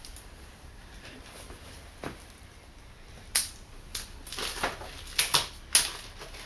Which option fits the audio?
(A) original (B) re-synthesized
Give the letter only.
A